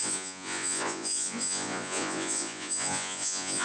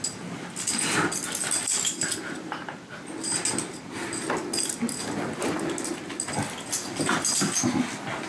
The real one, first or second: second